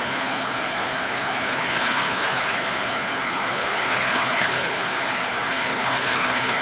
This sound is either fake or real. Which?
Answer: fake